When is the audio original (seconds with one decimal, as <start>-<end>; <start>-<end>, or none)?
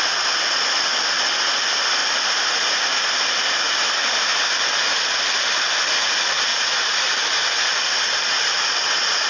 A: 0.0-2.0; 3.2-6.5; 7.3-9.3